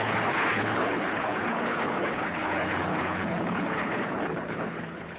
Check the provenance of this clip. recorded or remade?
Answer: remade